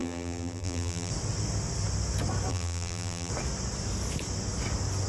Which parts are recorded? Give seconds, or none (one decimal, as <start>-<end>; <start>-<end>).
1.1-2.5; 3.3-5.1